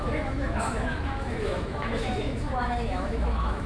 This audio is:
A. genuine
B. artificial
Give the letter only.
B